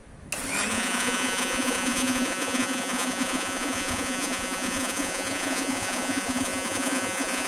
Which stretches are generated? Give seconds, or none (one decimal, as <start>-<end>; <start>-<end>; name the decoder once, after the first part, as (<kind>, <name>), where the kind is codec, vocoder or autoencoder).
0.7-7.5 (vocoder, Vocos)